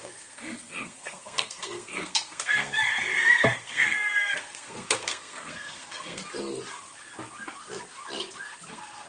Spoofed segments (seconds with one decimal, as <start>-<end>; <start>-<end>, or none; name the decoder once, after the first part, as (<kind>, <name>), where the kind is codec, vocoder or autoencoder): 0.0-6.2 (codec, SNAC); 8.7-9.1